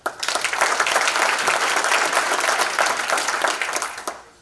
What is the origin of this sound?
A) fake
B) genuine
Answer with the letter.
B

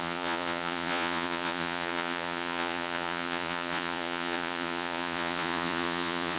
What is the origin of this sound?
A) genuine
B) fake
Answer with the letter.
B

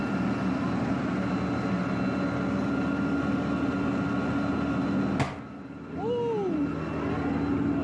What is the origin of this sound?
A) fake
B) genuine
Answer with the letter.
B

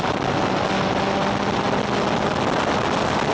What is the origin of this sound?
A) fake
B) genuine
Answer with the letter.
B